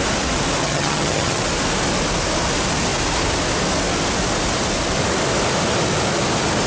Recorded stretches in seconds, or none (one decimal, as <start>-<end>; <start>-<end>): 0.0-0.6; 1.4-6.7